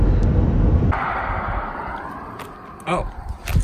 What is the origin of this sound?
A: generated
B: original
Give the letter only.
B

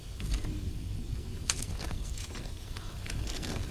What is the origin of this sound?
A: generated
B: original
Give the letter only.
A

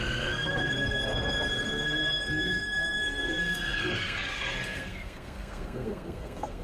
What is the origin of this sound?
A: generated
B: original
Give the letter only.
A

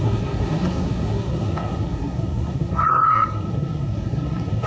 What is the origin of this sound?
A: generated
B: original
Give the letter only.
A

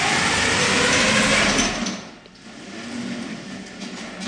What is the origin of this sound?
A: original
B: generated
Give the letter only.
A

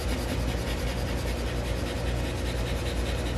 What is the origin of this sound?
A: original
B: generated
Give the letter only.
A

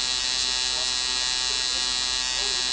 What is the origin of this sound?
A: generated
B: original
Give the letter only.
B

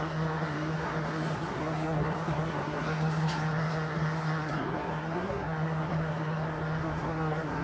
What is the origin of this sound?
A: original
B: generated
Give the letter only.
B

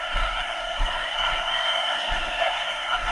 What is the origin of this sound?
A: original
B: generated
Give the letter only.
B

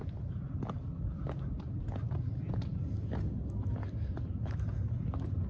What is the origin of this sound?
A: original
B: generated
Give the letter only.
A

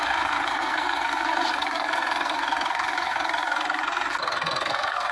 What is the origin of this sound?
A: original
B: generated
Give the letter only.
B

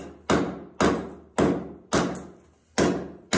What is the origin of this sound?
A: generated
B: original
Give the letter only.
B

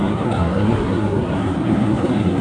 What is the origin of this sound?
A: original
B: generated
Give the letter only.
B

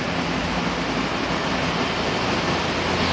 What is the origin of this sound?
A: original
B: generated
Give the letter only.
A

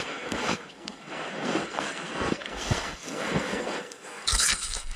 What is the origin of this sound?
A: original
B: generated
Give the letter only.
B